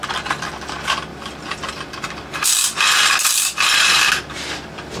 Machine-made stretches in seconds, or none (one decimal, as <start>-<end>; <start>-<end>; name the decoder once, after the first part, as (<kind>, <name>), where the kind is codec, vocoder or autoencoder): 1.1-4.1 (vocoder, BigVGAN v2)